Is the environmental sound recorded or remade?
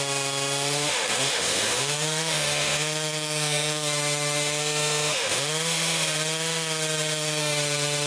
remade